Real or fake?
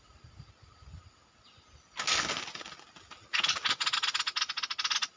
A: real